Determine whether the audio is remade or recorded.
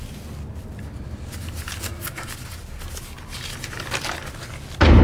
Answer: recorded